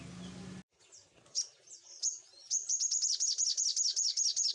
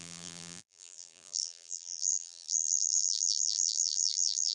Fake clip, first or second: second